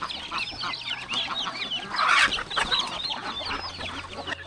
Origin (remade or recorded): recorded